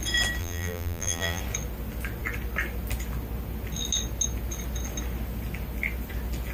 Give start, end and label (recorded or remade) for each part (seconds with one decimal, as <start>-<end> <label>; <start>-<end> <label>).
0.0-0.4 recorded; 0.4-1.4 remade; 1.4-6.5 recorded